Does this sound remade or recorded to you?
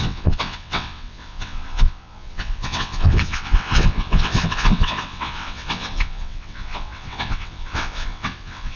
remade